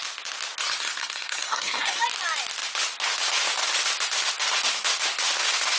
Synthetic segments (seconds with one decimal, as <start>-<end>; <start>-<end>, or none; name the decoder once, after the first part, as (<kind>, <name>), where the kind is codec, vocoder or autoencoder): 0.6-2.0 (codec, SNAC)